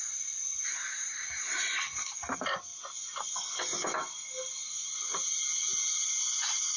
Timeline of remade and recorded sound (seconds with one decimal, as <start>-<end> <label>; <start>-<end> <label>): 0.0-0.9 recorded; 0.9-1.6 remade; 1.6-6.8 recorded